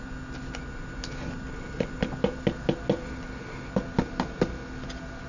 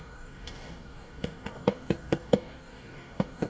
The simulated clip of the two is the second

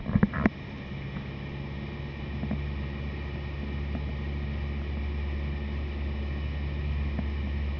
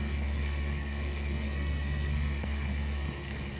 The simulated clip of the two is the second